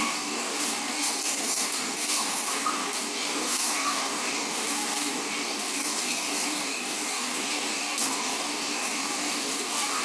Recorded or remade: remade